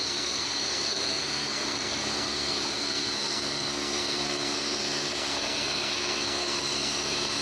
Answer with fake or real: fake